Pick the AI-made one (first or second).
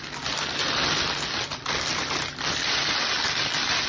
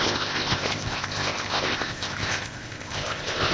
second